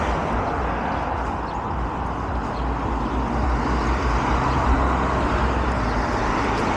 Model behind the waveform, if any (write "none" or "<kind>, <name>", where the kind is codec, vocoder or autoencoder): none